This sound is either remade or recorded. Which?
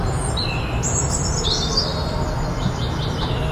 recorded